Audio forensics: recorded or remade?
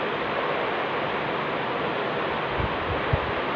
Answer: recorded